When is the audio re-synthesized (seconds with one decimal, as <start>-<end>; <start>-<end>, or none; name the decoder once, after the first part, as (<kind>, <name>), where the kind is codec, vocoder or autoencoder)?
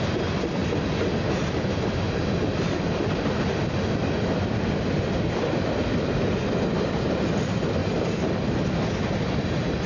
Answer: none